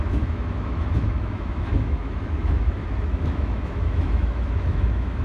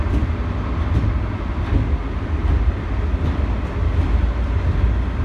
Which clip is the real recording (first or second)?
second